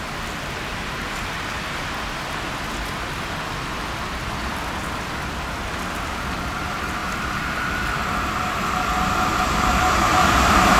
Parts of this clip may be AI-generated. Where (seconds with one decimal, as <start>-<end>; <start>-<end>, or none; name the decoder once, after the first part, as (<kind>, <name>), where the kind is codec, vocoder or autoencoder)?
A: 0.7-1.8 (vocoder, BigVGAN v2); 10.1-10.8